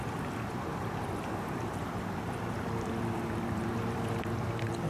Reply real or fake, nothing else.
fake